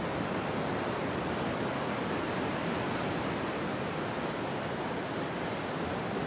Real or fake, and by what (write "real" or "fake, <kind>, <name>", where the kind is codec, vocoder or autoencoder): real